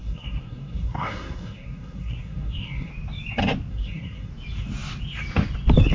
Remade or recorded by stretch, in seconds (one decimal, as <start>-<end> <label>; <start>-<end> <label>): 0.0-2.9 remade; 2.9-3.7 recorded; 3.7-4.3 remade; 4.3-5.9 recorded